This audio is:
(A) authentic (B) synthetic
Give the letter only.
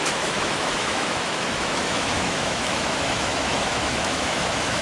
B